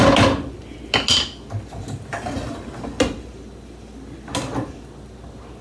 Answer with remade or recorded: recorded